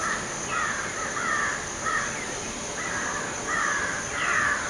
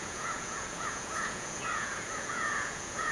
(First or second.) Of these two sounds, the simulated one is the second